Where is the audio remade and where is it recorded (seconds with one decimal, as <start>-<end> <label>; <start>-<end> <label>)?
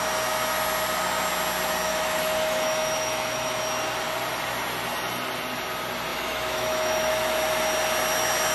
0.0-1.9 recorded; 1.9-3.6 remade; 3.6-6.1 recorded; 6.1-7.1 remade; 7.1-8.5 recorded